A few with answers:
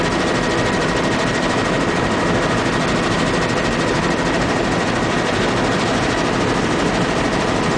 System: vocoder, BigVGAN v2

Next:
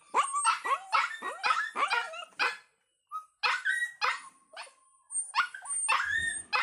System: none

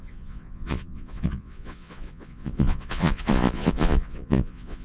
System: vocoder, Vocos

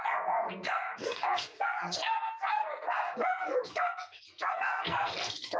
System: codec, SNAC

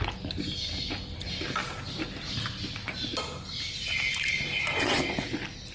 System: none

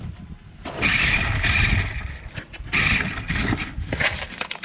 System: none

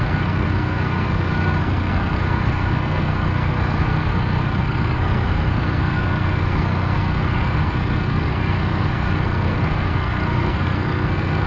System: codec, SNAC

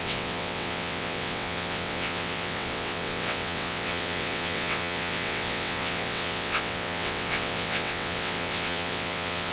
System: vocoder, WaveNeXt